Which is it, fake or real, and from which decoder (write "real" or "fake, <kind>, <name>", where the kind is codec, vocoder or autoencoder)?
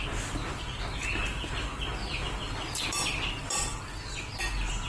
fake, vocoder, BigVGAN v2